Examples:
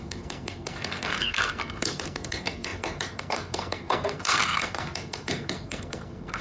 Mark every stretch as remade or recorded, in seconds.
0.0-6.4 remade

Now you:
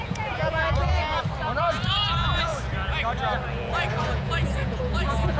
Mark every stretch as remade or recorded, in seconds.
0.0-1.0 remade; 1.0-1.6 recorded; 1.6-2.5 remade; 2.5-3.9 recorded; 3.9-5.4 remade

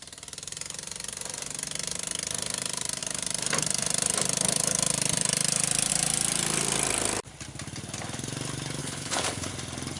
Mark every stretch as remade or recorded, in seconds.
0.0-8.8 recorded; 8.8-9.5 remade; 9.5-10.0 recorded

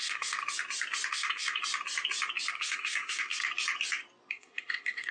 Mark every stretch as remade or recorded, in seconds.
0.0-0.4 remade; 0.4-1.1 recorded; 1.1-1.6 remade; 1.6-2.5 recorded; 2.5-3.4 remade; 3.4-4.3 recorded; 4.3-5.1 remade

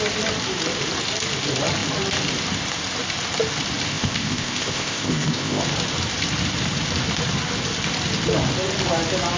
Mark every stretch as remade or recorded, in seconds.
0.0-3.9 recorded; 3.9-5.6 remade; 5.6-9.4 recorded